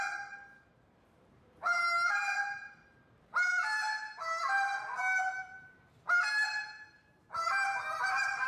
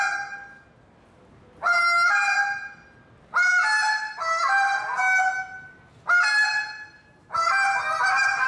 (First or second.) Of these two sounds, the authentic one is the second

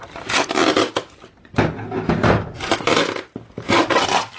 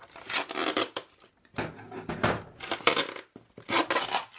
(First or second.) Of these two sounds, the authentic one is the second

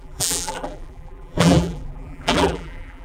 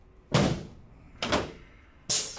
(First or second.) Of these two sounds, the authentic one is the second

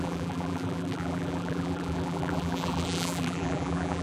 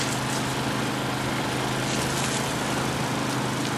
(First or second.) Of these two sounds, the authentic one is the second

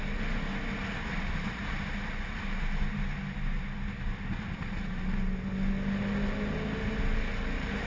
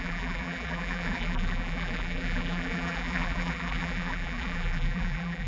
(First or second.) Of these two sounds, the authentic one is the first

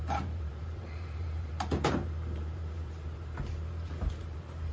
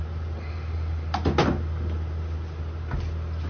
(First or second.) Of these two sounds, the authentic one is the second